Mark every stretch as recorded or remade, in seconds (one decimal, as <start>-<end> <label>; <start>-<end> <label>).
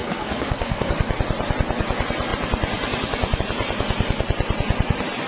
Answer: 0.0-0.9 remade; 0.9-5.3 recorded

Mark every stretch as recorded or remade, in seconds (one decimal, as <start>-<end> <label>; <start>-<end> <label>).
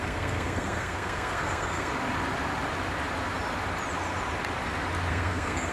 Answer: 0.0-1.9 remade; 1.9-5.1 recorded; 5.1-5.7 remade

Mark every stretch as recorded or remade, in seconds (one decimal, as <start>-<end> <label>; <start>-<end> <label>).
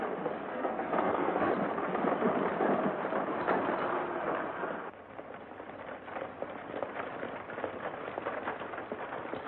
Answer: 0.0-0.5 recorded; 0.5-1.5 remade; 1.5-9.5 recorded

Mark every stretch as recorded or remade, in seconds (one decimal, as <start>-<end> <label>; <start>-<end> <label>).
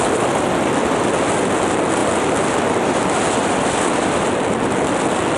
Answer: 0.0-5.4 recorded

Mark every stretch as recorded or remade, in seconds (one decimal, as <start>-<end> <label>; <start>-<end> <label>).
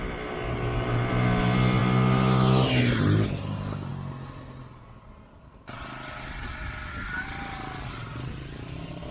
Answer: 0.0-9.1 recorded